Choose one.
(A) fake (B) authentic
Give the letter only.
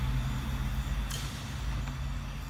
B